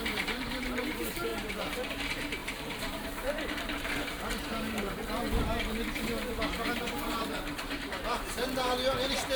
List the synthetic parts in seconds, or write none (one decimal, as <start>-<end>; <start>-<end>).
0.0-5.0; 6.8-9.4